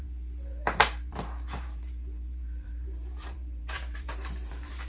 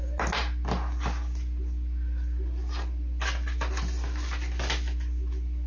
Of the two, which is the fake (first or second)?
first